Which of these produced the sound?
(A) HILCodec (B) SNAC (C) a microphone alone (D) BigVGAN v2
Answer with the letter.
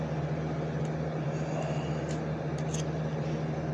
C